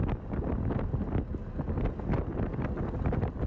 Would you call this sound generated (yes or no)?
no